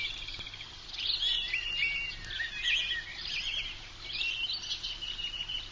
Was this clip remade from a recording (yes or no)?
no